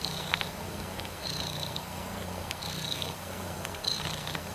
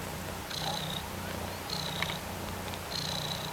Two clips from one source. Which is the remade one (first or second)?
first